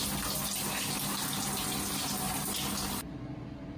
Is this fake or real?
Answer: real